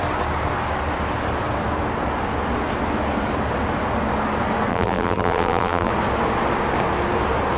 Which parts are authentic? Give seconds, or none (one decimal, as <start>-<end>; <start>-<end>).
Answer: 0.0-4.7; 5.9-7.6

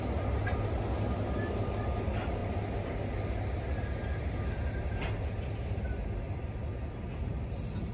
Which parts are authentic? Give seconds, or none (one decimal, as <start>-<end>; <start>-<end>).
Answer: 0.0-7.9

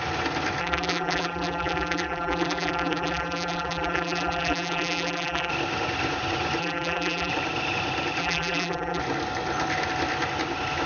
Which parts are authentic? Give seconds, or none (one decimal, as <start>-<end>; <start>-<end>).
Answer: 0.0-0.6; 5.5-6.6; 7.3-8.2; 9.0-10.9

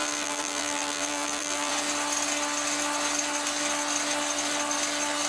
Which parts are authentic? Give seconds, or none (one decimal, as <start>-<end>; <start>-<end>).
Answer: 1.7-5.3

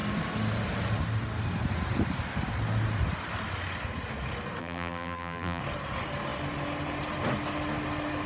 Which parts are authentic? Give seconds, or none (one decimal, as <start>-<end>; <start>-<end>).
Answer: 0.0-4.6; 5.6-8.3

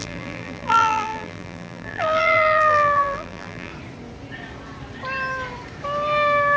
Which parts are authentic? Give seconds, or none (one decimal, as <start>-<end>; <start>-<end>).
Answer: 3.7-6.6

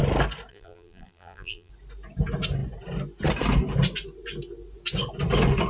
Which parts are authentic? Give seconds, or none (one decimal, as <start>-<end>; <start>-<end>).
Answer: 0.0-0.5; 1.7-5.7